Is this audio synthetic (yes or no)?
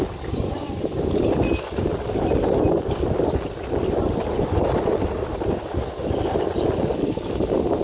no